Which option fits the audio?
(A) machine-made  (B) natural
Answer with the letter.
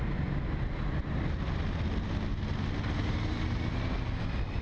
B